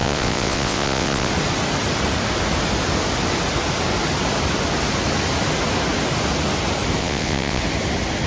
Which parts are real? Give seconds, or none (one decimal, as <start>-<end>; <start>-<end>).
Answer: 1.3-7.0; 7.6-8.3